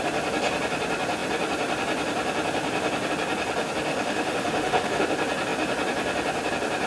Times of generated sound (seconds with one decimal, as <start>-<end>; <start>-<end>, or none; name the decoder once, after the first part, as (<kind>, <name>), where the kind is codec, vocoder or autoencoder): 3.9-5.0 (autoencoder, DAC-VAE)